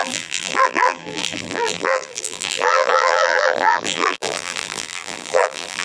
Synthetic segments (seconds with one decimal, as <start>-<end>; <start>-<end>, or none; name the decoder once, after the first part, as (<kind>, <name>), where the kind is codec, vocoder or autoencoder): 0.0-5.8 (vocoder, BigVGAN v2)